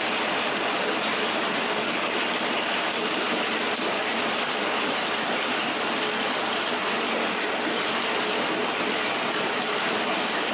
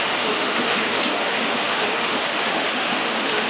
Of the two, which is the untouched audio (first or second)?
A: first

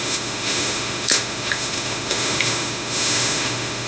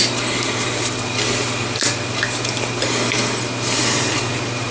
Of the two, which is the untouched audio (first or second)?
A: second